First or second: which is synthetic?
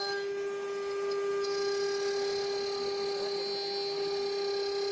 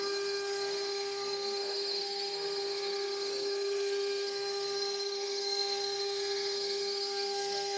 second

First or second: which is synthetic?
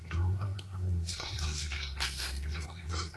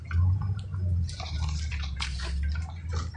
first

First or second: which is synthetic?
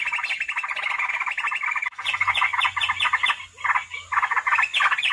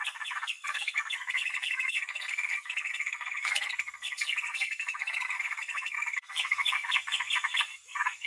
second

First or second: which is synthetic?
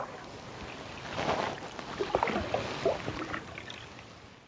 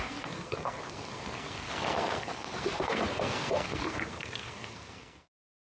second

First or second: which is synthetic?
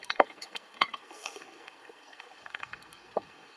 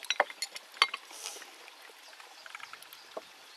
first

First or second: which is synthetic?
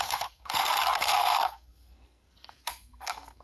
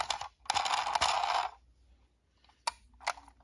first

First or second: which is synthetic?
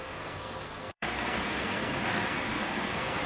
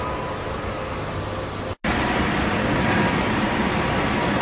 first